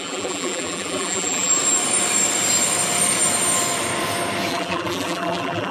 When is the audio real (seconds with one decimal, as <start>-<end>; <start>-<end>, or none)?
1.5-4.5